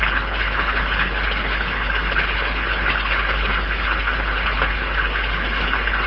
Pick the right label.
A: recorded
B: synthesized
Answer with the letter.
B